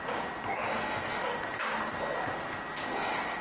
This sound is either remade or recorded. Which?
recorded